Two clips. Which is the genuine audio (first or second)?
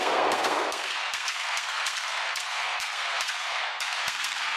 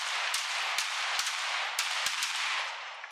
second